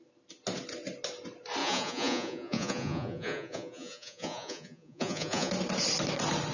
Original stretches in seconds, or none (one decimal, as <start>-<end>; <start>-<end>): 0.0-1.6; 5.5-6.5